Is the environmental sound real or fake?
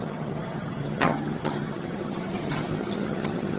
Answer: fake